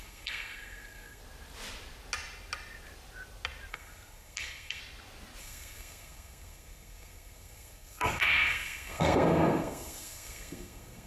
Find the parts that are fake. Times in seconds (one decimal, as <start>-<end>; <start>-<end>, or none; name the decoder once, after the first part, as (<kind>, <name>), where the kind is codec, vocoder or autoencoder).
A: 0.0-1.2 (codec, SNAC); 3.7-4.8; 5.4-11.1

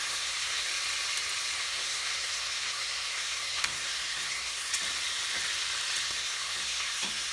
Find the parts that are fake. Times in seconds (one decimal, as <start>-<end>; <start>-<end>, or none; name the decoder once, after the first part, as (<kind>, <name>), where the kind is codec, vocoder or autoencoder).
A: 0.0-0.7 (codec, SNAC); 1.6-4.7; 6.0-7.3

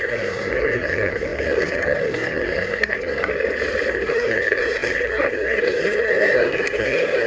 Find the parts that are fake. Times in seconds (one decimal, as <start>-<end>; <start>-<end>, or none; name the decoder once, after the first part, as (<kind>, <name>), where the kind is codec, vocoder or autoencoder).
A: 0.0-3.3 (codec, SNAC); 3.9-7.3

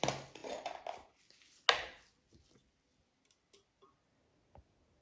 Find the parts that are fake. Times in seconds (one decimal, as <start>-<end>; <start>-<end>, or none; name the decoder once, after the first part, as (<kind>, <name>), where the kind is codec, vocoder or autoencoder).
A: none

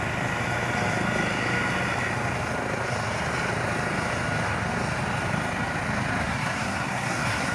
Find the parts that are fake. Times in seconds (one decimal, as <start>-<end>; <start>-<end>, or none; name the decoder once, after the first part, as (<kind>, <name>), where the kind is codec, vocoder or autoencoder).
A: 6.2-7.5 (codec, SNAC)

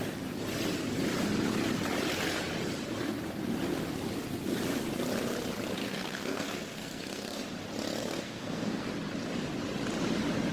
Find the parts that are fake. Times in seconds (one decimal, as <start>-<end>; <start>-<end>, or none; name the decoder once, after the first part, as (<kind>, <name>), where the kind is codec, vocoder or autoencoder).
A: 5.8-7.4 (codec, SNAC); 8.0-8.9